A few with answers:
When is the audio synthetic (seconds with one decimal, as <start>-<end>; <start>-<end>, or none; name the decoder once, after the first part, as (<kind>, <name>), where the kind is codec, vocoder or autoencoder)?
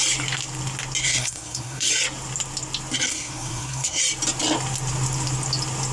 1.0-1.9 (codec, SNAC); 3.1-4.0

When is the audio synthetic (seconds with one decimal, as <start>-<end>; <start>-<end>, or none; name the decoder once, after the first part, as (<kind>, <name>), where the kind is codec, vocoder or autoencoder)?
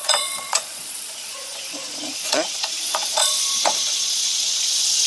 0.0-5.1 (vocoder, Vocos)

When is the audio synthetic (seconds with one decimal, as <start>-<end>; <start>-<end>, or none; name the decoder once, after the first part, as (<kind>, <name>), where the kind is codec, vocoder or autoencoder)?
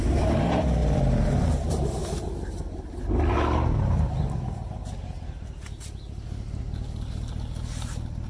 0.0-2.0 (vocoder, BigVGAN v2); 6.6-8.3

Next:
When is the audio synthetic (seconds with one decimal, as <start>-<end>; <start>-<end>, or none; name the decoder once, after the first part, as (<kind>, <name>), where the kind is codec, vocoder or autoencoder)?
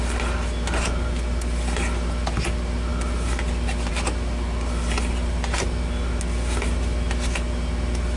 none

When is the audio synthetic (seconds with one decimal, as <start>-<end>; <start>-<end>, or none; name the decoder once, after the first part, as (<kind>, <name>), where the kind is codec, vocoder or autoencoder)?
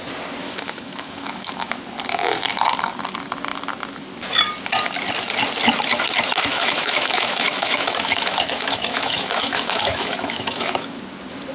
0.4-1.7 (autoencoder, DAC-VAE); 6.5-11.0